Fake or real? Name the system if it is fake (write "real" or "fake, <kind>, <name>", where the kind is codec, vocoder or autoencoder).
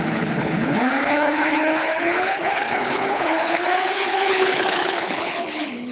fake, codec, HILCodec